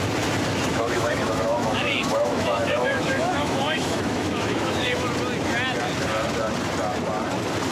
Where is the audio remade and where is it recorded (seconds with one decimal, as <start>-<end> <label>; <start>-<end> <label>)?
0.0-0.7 recorded; 0.7-5.1 remade; 5.1-7.7 recorded